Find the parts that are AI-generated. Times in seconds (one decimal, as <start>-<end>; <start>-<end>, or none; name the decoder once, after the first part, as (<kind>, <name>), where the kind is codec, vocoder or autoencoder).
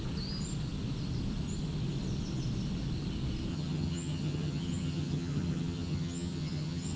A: 3.5-7.0 (vocoder, HiFi-GAN)